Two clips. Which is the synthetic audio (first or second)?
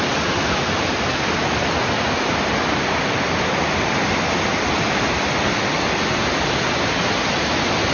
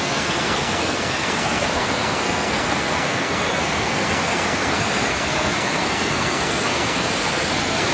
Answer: second